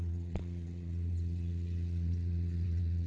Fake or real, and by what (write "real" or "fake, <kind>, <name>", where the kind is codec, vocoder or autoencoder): fake, vocoder, WaveNeXt